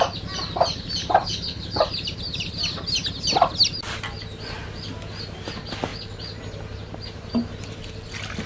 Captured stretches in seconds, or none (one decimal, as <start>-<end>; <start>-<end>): 0.0-1.2; 1.8-8.5